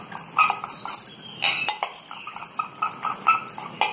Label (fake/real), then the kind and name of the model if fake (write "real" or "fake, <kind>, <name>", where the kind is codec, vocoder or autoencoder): real